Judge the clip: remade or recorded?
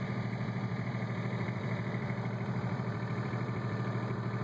remade